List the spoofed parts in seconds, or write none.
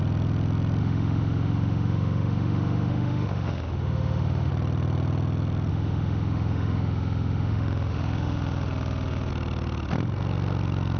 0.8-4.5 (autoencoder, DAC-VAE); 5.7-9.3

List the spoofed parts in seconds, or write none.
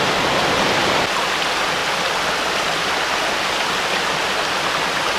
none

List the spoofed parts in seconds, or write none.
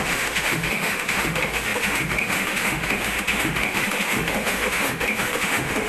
0.0-5.9 (autoencoder, DAC-VAE)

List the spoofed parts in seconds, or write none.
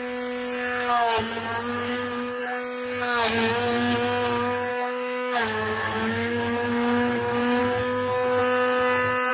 1.7-2.4 (autoencoder, DAC-VAE); 4.7-7.6